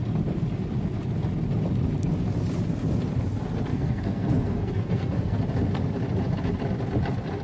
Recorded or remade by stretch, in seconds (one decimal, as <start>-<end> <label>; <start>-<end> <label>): 0.0-3.7 recorded; 3.7-5.4 remade; 5.4-7.4 recorded